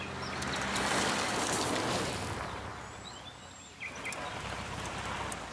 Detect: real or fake real